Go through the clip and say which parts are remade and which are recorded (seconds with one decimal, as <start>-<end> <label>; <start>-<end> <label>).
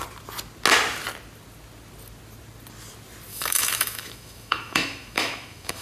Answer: 0.0-3.3 recorded; 3.3-5.8 remade